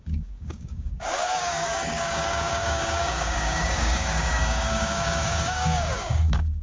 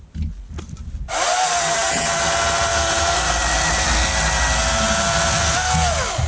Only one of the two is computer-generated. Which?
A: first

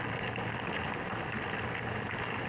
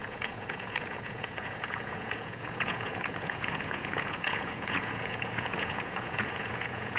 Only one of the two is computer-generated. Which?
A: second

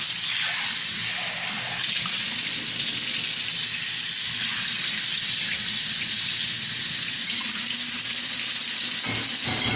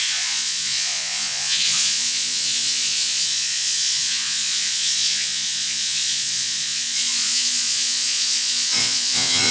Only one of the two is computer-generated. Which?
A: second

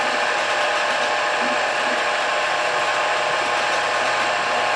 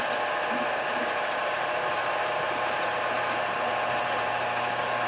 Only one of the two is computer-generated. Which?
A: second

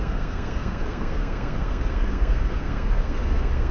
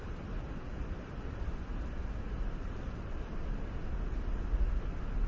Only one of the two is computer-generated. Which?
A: first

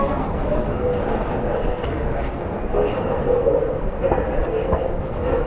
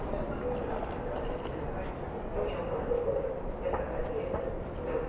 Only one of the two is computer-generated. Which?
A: first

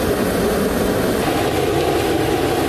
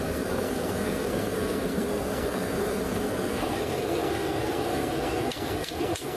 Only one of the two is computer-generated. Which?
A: second